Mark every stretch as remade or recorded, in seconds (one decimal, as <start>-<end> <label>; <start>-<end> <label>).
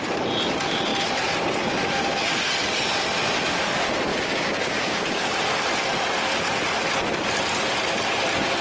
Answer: 0.0-4.1 recorded; 4.1-5.3 remade; 5.3-8.6 recorded